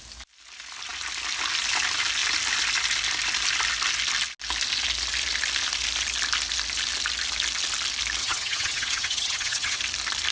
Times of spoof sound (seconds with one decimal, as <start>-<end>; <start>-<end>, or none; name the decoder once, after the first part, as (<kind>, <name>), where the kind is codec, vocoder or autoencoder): 8.2-9.8 (vocoder, HiFi-GAN)